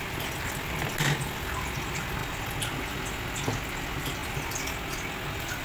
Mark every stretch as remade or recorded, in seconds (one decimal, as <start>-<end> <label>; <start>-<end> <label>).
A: 0.0-5.6 recorded